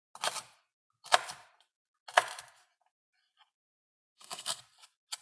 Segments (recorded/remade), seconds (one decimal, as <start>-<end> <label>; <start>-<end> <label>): 0.0-3.9 recorded; 3.9-4.6 remade; 4.6-5.2 recorded